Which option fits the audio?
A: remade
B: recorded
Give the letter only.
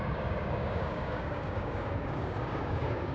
A